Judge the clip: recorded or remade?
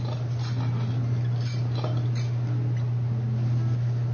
recorded